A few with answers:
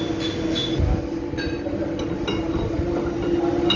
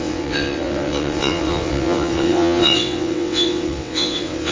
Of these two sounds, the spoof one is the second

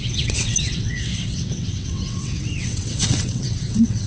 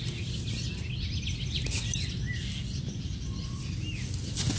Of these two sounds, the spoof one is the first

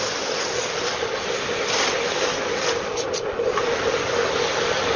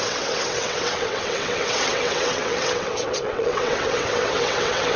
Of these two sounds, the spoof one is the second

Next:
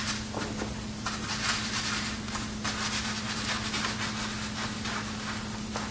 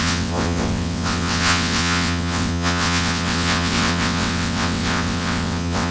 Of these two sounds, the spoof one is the second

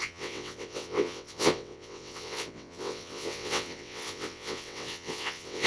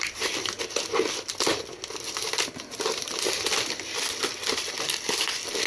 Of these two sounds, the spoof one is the first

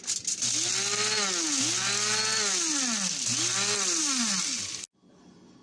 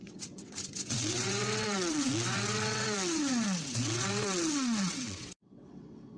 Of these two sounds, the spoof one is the second